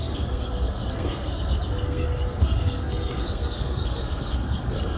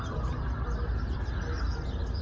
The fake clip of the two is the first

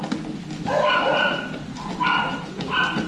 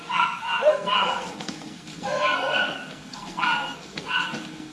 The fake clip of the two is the second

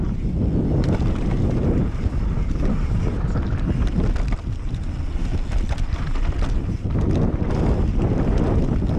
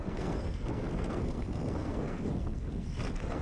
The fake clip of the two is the second